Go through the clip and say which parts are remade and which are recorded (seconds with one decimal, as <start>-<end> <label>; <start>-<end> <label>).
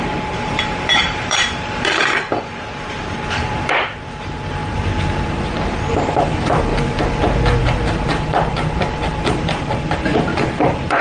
0.0-2.3 remade; 2.3-3.3 recorded; 3.3-6.7 remade; 6.7-7.6 recorded; 7.6-11.0 remade